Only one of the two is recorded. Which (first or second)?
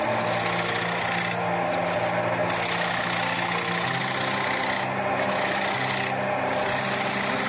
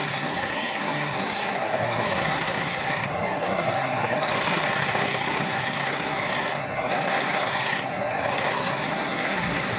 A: first